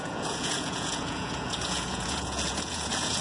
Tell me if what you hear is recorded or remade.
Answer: remade